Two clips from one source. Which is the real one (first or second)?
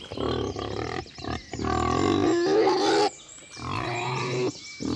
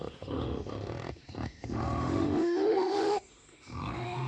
first